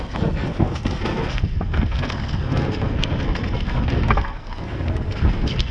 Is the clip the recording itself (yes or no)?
no